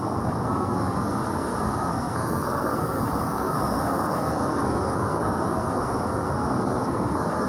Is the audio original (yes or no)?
no